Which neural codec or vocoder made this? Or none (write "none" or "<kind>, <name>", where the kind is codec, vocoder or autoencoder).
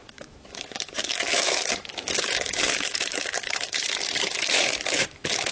autoencoder, DAC-VAE